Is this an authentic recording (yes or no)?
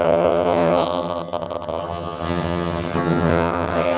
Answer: no